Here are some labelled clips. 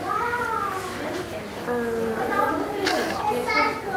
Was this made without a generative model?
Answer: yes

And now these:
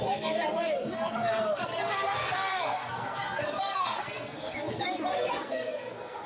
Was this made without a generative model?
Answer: no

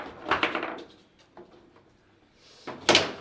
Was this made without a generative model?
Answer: yes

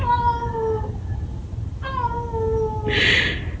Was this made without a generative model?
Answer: yes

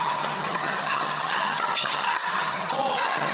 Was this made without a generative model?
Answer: no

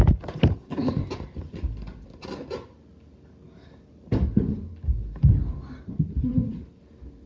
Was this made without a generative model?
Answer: yes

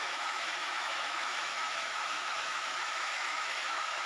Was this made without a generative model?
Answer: no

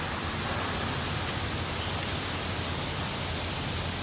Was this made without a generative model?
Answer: yes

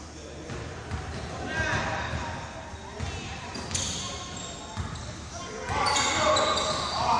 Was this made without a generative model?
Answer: yes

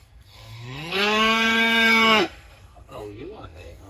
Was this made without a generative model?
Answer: no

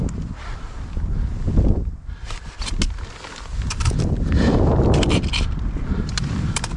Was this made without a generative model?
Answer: yes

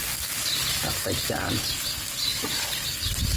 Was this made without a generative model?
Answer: yes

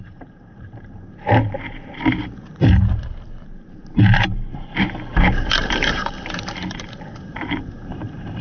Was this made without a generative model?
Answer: no